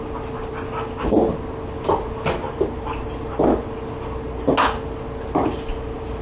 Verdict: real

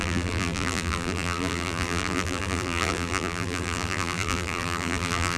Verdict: fake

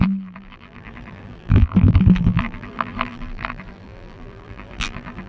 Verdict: fake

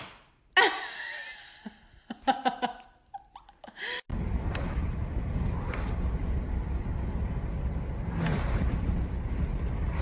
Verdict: real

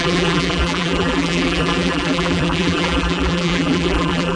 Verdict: fake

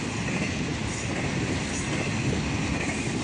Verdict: fake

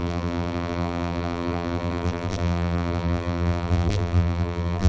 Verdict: fake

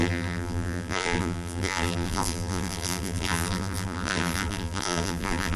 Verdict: fake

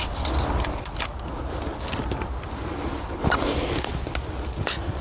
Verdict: real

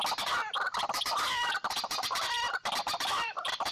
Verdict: fake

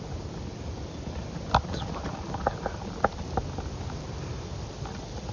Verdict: real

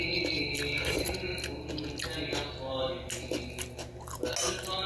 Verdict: real